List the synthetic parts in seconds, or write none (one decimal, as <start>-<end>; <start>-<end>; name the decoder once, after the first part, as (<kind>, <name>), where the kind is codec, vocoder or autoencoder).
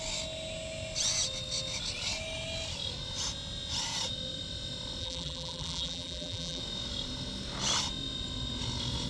5.0-6.6 (vocoder, BigVGAN v2)